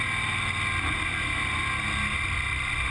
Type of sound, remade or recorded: recorded